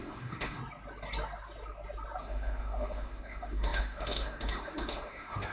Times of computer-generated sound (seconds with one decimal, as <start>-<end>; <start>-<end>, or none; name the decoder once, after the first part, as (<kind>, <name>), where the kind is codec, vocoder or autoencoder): 0.0-0.6 (autoencoder, DAC-VAE); 2.2-5.5